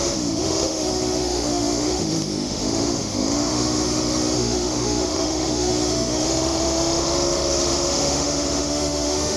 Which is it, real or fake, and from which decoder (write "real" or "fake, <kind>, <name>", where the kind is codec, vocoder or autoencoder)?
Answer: fake, autoencoder, DAC-VAE